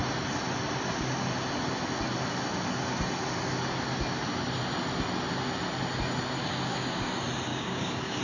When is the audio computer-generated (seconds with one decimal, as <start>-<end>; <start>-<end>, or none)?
6.4-7.1; 7.5-8.2